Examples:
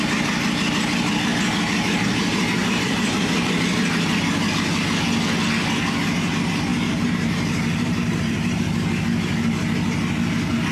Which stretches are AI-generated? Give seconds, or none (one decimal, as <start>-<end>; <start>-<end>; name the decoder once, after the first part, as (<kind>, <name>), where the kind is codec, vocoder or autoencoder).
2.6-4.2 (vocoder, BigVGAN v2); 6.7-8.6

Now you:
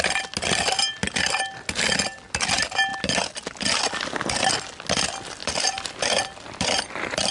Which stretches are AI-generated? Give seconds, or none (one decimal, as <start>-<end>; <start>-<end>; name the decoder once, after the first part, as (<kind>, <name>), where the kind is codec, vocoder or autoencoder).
5.4-7.3 (vocoder, BigVGAN v2)

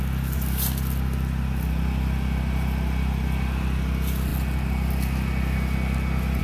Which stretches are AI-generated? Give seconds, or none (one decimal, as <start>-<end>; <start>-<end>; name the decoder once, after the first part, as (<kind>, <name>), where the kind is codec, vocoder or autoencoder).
none